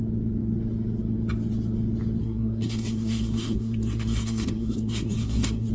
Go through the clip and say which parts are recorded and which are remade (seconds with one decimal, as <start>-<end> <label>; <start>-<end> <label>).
0.0-2.2 recorded; 2.2-5.7 remade